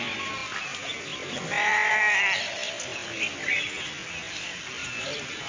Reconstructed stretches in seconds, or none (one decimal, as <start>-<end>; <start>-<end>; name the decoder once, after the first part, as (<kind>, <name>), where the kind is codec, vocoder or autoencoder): none